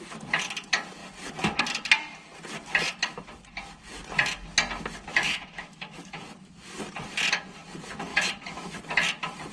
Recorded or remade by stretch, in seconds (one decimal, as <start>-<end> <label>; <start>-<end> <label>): 0.0-5.1 recorded; 5.1-6.2 remade; 6.2-8.1 recorded; 8.1-8.7 remade; 8.7-9.5 recorded